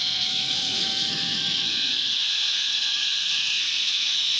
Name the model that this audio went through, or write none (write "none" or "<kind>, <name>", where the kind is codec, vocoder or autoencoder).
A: codec, SNAC